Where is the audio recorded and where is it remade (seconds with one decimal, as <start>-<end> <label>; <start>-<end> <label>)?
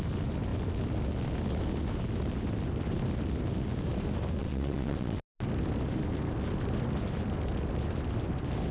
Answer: 0.0-4.4 recorded; 4.4-5.2 remade; 5.2-8.7 recorded